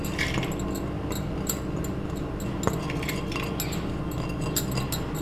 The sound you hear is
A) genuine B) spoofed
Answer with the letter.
A